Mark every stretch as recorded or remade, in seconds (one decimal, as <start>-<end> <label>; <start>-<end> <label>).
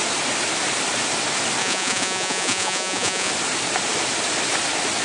0.0-1.6 recorded; 1.6-3.3 remade; 3.3-5.0 recorded